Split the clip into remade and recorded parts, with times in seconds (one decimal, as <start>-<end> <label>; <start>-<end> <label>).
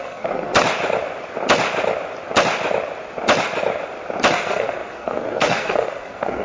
0.0-0.5 remade; 0.5-4.3 recorded; 4.3-6.4 remade